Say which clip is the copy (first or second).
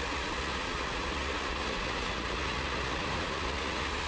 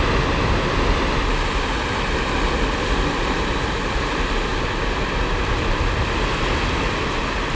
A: first